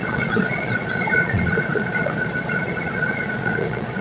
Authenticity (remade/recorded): remade